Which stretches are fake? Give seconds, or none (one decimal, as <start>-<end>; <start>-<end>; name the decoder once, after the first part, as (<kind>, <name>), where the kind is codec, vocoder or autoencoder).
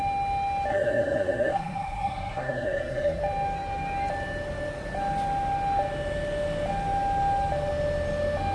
0.7-3.2 (codec, SNAC)